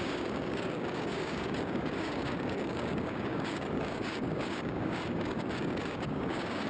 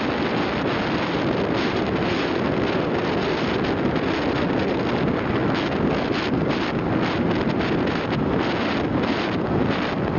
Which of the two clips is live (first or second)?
second